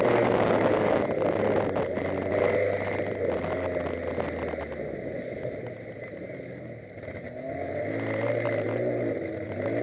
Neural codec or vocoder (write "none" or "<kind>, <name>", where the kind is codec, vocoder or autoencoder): none